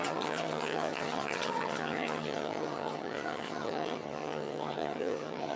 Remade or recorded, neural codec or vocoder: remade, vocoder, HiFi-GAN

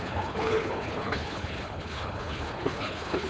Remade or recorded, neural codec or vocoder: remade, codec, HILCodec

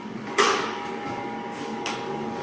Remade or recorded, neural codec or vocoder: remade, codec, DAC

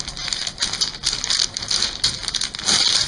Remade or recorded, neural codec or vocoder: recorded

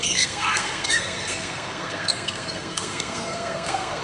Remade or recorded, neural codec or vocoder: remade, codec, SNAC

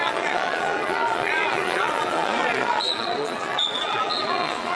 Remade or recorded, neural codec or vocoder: remade, vocoder, Vocos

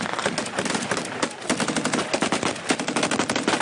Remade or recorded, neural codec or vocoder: recorded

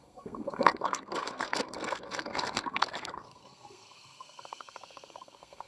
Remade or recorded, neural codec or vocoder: remade, codec, SNAC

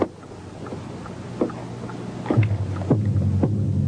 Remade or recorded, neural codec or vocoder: recorded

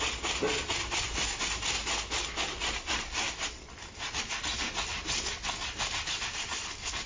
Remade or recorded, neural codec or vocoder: recorded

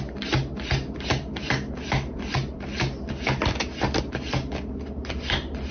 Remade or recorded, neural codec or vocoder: recorded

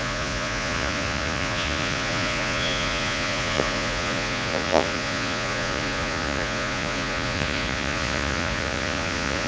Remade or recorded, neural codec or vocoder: remade, vocoder, Vocos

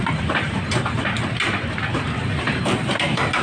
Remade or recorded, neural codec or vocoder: remade, vocoder, BigVGAN v2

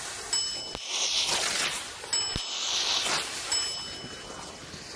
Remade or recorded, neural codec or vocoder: recorded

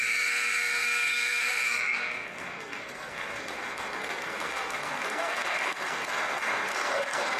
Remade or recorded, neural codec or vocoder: remade, codec, SNAC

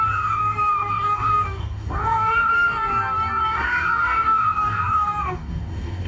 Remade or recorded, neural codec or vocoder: remade, codec, DAC